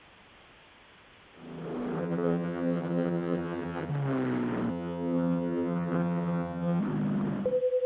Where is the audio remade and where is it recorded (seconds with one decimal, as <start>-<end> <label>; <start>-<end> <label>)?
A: 0.0-2.0 recorded; 2.0-3.9 remade; 3.9-4.7 recorded; 4.7-6.8 remade; 6.8-7.9 recorded